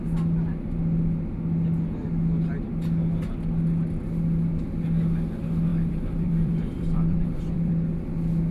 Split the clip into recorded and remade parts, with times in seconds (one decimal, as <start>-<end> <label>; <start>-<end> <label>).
0.0-5.7 recorded; 5.7-7.7 remade; 7.7-8.5 recorded